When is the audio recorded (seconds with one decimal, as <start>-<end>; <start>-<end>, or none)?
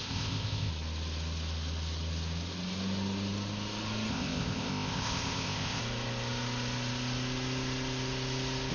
0.7-4.1; 5.8-8.7